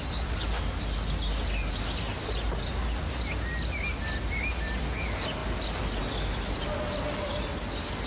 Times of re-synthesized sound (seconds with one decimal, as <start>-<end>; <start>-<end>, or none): none